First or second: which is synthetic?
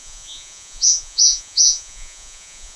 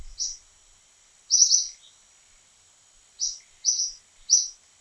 first